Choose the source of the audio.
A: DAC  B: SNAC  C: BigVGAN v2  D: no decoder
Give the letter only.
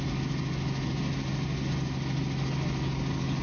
D